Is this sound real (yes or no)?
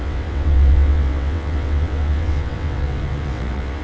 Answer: no